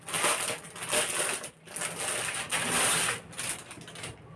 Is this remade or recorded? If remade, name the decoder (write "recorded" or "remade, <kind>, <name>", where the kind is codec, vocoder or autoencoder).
recorded